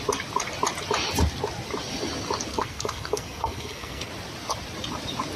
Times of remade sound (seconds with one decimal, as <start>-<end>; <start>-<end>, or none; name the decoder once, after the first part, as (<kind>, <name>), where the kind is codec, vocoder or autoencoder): 2.5-4.1 (codec, SNAC)